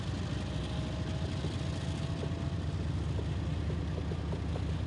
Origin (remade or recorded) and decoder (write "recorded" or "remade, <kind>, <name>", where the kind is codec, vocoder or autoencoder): recorded